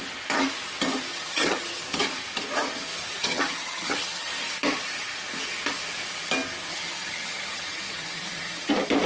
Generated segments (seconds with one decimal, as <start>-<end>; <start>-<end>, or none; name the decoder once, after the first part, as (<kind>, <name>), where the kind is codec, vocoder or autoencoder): 1.1-1.8 (vocoder, HiFi-GAN); 3.2-4.3; 6.7-8.7

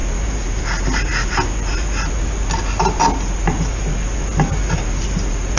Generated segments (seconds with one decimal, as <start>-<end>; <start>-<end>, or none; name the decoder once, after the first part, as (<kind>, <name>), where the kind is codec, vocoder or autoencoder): none

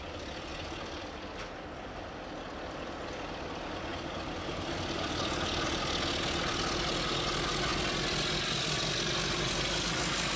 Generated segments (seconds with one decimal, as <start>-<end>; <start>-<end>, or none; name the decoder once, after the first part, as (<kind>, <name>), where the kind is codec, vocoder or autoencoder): none